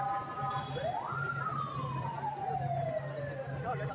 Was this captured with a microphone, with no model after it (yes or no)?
yes